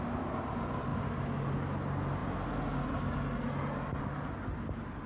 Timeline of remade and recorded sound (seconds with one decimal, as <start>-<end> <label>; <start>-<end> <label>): 0.0-5.1 recorded